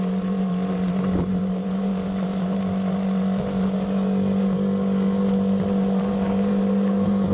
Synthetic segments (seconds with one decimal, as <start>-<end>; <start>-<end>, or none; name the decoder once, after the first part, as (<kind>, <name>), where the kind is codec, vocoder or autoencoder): 0.0-1.9 (vocoder, BigVGAN v2); 6.3-7.3